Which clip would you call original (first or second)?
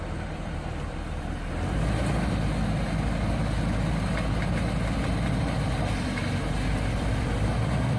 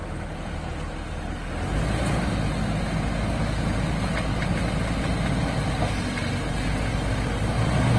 second